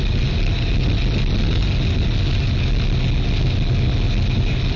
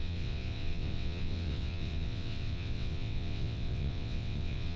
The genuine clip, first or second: first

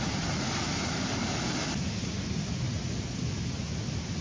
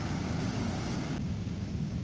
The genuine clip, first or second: first